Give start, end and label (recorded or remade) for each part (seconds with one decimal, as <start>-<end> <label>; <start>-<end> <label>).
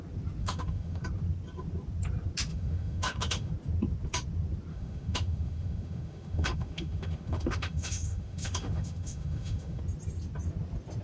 0.0-0.4 recorded; 0.4-1.0 remade; 1.0-2.5 recorded; 2.5-3.5 remade; 3.5-4.7 recorded; 4.7-9.8 remade; 9.8-11.0 recorded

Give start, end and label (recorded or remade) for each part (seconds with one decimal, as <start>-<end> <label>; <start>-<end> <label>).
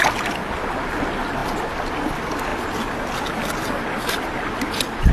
0.0-5.1 recorded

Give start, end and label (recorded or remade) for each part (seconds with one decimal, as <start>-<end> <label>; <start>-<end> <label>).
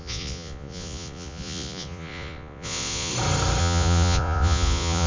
0.0-3.1 remade; 3.1-3.6 recorded; 3.6-5.1 remade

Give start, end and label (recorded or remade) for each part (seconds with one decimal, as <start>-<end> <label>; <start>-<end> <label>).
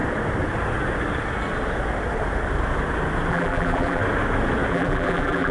0.0-3.3 recorded; 3.3-4.0 remade; 4.0-4.7 recorded; 4.7-5.5 remade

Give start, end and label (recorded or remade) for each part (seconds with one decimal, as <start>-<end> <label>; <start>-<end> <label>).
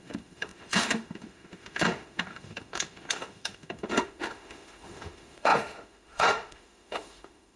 0.0-7.6 remade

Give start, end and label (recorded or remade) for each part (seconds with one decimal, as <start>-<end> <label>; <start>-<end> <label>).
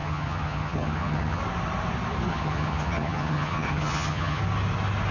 0.0-1.4 remade; 1.4-2.3 recorded; 2.3-4.4 remade; 4.4-5.1 recorded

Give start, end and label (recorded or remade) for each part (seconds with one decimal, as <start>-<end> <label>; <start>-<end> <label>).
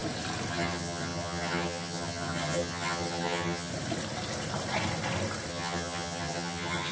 0.0-0.5 recorded; 0.5-3.7 remade; 3.7-5.5 recorded; 5.5-6.9 remade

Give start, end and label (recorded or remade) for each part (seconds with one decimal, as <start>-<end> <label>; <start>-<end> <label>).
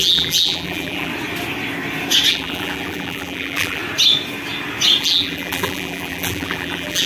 0.0-1.1 remade; 1.1-2.3 recorded; 2.3-3.8 remade; 3.8-5.0 recorded; 5.0-7.1 remade